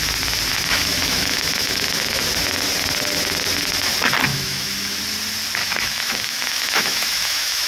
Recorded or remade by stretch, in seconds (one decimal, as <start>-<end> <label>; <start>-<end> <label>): 0.0-0.5 recorded; 0.5-2.2 remade; 2.2-4.3 recorded; 4.3-5.0 remade; 5.0-5.6 recorded; 5.6-7.7 remade